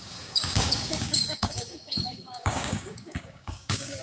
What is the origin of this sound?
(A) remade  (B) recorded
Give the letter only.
A